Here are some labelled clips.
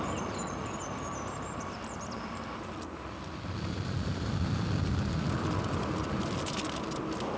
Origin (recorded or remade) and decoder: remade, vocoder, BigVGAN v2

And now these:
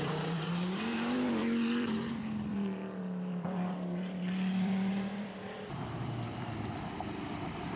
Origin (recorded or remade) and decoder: remade, vocoder, BigVGAN v2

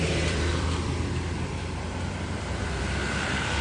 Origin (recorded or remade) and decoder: remade, vocoder, BigVGAN v2